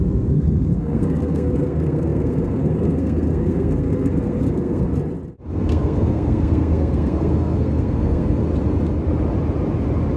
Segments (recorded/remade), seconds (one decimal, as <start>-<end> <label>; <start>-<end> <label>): 0.0-4.9 remade; 4.9-5.5 recorded; 5.5-8.4 remade; 8.4-10.2 recorded